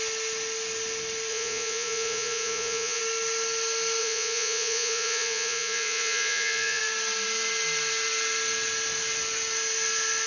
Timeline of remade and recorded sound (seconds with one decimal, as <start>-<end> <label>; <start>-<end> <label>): 0.0-1.3 recorded; 1.3-3.0 remade; 3.0-4.0 recorded; 4.0-6.8 remade; 6.8-10.3 recorded